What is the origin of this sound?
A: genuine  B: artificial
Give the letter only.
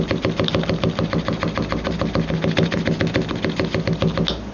A